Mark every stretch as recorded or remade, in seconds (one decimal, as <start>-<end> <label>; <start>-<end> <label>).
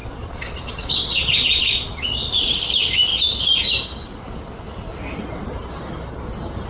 0.0-2.3 remade; 2.3-6.7 recorded